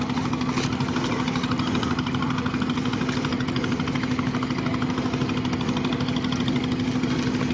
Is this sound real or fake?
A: real